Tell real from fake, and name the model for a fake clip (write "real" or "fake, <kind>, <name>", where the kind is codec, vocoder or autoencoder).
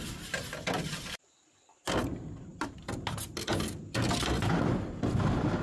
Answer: real